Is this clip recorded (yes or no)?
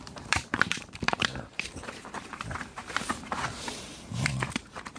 no